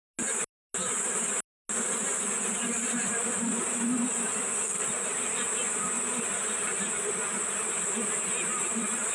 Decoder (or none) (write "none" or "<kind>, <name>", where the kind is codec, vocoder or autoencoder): none